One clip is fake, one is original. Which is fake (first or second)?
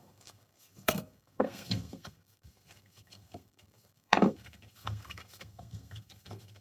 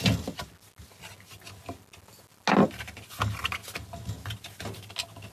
first